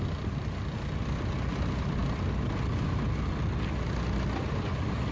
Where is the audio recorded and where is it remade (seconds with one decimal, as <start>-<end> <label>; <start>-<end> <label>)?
0.0-5.1 recorded